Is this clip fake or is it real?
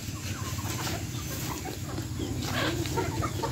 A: real